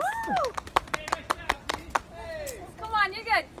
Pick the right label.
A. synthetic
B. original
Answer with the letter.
B